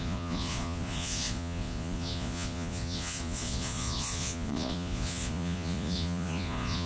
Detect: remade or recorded remade